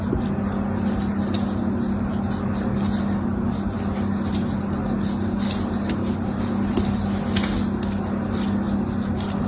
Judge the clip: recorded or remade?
recorded